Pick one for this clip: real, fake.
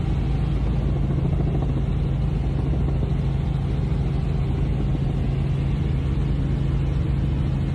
real